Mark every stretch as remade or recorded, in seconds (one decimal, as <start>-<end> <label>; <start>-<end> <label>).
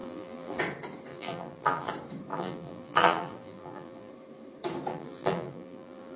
0.0-0.6 remade; 0.6-1.1 recorded; 1.1-1.9 remade; 1.9-2.3 recorded; 2.3-4.1 remade; 4.1-4.9 recorded; 4.9-6.2 remade